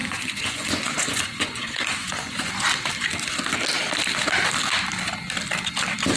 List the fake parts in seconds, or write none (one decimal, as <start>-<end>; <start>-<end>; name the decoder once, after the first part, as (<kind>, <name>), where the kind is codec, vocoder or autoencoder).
0.0-2.5 (vocoder, Vocos)

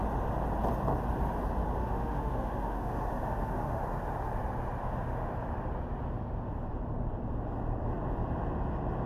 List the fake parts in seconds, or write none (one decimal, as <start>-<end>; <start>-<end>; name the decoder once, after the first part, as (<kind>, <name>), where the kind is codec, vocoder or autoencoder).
1.8-3.8 (autoencoder, DAC-VAE); 4.8-5.3